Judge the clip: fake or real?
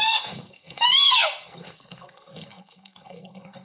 fake